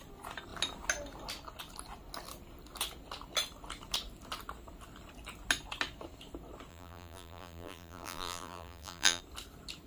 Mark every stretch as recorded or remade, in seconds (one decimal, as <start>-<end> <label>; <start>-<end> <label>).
0.0-6.7 recorded; 6.7-9.2 remade; 9.2-9.9 recorded